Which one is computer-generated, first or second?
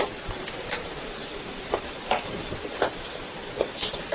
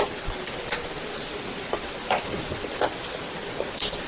first